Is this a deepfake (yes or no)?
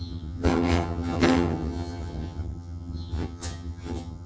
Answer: yes